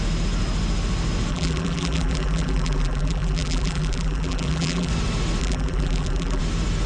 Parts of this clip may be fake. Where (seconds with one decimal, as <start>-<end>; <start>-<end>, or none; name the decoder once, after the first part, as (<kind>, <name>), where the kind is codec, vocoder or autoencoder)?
1.3-4.9 (vocoder, BigVGAN v2); 5.4-6.4

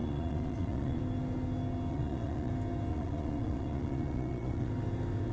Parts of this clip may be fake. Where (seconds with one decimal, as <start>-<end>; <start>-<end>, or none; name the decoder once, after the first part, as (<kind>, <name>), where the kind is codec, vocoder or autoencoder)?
0.0-1.0 (vocoder, Vocos); 1.9-2.5; 2.9-4.7

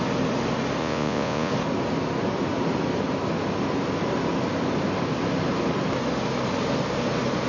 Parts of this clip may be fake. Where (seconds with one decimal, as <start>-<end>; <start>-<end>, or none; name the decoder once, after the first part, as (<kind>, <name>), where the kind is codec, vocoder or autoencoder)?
0.8-1.5 (vocoder, Vocos)

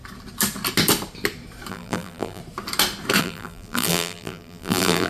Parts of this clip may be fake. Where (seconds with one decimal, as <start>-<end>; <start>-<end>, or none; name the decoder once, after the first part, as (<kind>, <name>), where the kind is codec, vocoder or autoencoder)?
1.7-2.4 (vocoder, BigVGAN v2); 3.2-5.1

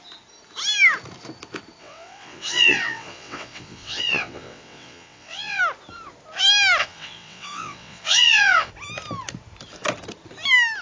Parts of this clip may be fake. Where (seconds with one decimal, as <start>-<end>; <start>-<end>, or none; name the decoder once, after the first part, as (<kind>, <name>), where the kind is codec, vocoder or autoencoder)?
1.8-5.6 (vocoder, WaveNeXt); 6.8-8.7

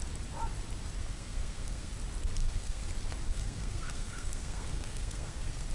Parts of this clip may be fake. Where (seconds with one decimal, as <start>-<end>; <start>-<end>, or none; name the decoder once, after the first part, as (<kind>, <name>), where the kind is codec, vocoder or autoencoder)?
1.0-1.9 (codec, SNAC); 2.4-2.9; 3.3-5.7